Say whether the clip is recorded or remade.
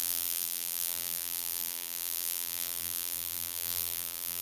remade